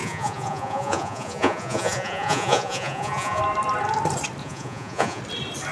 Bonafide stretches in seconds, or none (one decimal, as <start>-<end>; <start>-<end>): 3.4-4.4; 5.2-5.7